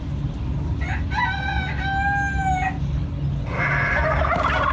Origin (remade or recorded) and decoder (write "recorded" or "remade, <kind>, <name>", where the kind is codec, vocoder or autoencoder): recorded